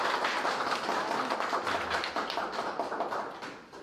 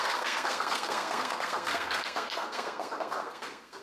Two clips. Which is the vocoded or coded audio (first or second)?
second